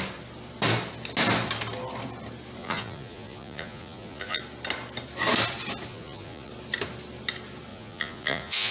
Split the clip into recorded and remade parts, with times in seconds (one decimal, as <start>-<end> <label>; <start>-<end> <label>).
0.0-2.6 recorded; 2.6-4.4 remade; 4.4-5.9 recorded; 5.9-6.5 remade; 6.5-7.7 recorded; 7.7-8.7 remade